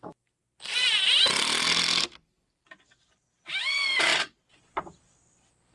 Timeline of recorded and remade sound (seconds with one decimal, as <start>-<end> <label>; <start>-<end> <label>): 0.0-5.7 remade